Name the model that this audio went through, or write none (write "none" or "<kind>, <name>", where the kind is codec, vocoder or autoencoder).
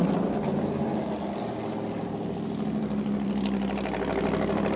none